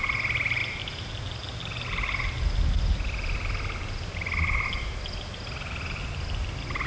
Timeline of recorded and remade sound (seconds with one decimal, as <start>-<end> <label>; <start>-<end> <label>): 0.0-6.9 recorded